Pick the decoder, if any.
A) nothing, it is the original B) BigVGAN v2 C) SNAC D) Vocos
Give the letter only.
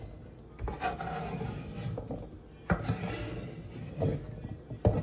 A